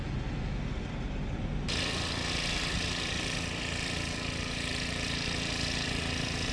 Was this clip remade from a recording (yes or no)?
no